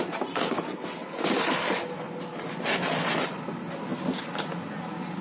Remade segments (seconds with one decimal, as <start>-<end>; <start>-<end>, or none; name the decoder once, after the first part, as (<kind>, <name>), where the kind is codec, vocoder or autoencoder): none